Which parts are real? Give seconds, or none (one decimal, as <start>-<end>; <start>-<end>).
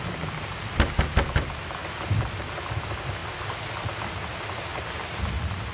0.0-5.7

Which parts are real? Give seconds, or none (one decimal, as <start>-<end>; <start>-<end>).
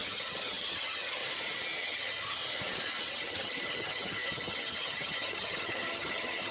1.2-1.8; 2.4-3.1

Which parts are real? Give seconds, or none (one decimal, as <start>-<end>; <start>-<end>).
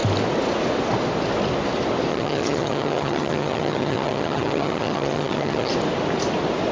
0.0-2.1; 5.7-6.7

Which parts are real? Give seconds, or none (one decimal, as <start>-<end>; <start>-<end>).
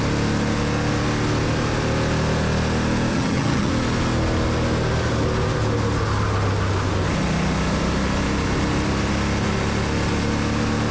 0.0-3.1; 3.7-10.9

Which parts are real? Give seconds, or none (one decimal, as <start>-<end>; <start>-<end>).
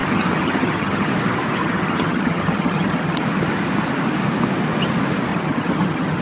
1.1-1.6; 3.2-5.3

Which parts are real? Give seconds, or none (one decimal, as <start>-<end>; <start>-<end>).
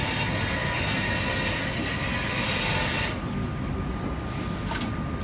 0.0-5.2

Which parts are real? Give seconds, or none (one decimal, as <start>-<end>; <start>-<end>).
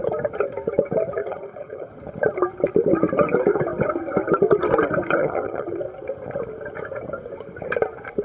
0.0-1.2; 1.9-5.2; 5.8-8.2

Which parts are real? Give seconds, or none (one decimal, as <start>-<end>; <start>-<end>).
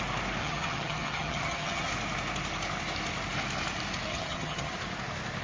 0.0-0.4; 1.9-4.1; 4.7-5.4